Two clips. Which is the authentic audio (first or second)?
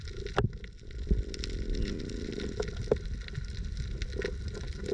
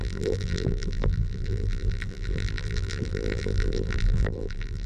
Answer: first